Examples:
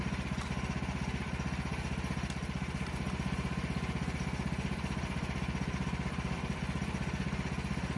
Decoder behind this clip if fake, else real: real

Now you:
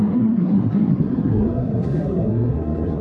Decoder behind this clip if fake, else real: fake, codec, SNAC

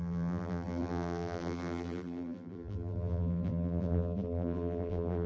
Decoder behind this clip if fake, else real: fake, vocoder, BigVGAN v2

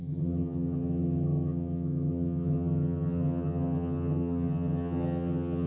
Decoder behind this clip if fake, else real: fake, vocoder, HiFi-GAN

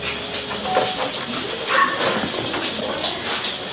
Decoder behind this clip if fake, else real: real